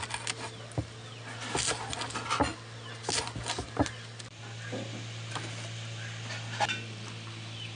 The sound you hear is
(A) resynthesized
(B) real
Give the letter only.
B